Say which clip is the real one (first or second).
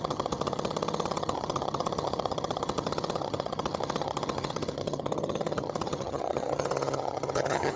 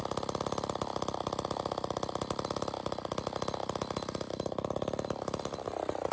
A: second